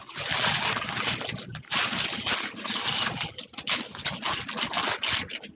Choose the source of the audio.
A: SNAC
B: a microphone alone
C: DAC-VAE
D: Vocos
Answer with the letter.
B